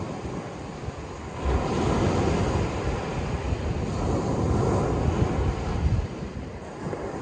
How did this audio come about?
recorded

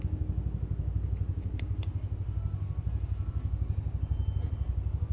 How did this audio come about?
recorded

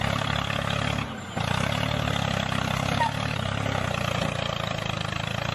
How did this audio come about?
recorded